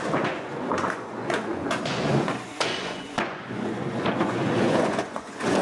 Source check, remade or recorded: remade